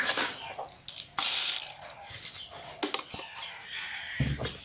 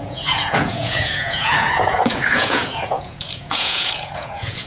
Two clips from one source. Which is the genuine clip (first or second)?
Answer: first